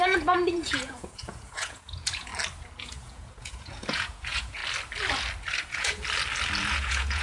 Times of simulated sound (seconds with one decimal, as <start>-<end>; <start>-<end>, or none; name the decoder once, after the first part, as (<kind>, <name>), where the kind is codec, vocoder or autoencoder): 0.0-2.3 (vocoder, Vocos); 2.8-4.6; 5.6-6.0; 6.7-7.2